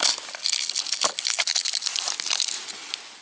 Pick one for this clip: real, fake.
real